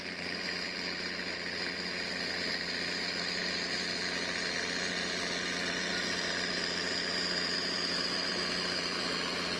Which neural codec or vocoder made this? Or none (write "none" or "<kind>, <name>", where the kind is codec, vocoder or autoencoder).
none